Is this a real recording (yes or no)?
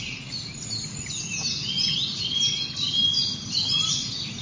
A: yes